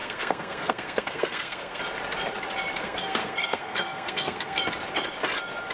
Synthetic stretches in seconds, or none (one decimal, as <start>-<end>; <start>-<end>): 0.0-1.8; 2.8-4.6